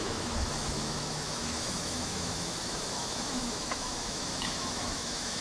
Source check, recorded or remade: remade